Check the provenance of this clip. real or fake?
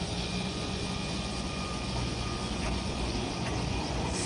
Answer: fake